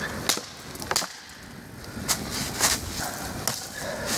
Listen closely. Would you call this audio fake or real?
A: real